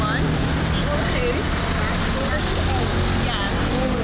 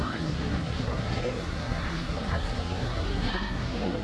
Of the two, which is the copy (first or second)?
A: second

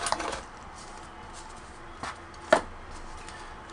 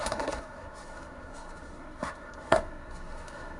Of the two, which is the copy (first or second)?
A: second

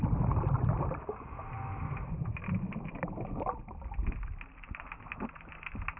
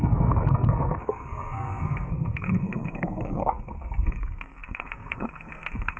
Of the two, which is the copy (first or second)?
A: second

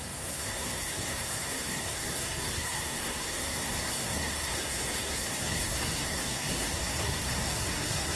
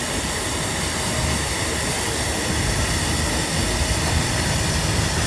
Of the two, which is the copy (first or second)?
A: first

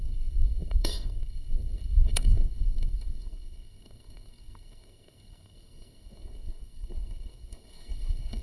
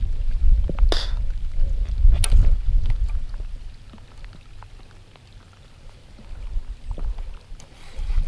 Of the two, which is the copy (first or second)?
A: first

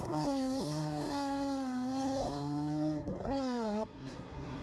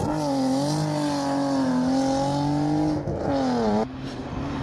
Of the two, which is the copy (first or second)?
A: first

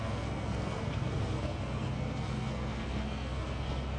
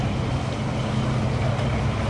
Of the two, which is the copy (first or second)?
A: first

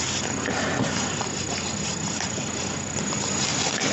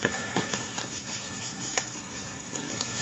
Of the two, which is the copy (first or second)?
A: second